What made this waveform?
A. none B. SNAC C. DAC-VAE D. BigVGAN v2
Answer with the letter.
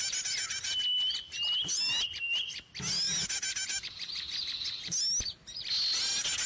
A